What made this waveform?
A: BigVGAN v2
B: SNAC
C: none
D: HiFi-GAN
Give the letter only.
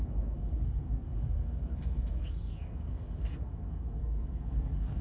B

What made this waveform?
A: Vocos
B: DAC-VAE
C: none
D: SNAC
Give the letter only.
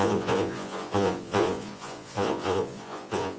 A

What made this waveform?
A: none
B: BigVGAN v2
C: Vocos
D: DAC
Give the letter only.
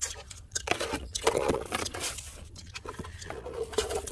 C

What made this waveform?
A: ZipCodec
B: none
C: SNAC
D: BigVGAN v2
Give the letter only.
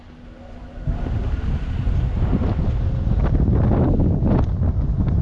B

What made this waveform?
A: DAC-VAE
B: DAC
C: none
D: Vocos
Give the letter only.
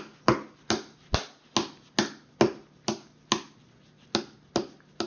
C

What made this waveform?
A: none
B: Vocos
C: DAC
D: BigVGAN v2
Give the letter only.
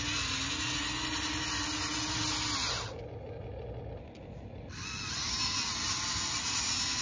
A